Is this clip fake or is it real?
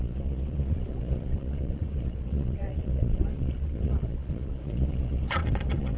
fake